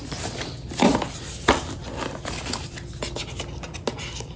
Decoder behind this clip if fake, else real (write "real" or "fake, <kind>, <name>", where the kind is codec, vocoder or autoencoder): real